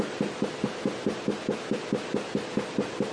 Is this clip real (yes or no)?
yes